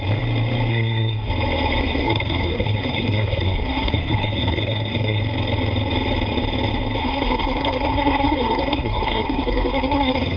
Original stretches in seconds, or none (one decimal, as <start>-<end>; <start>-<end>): 0.0-0.7; 1.3-1.8; 5.2-7.0